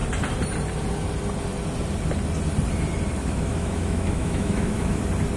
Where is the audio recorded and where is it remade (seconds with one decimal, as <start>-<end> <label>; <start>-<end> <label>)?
0.0-3.2 recorded; 3.2-5.0 remade; 5.0-5.4 recorded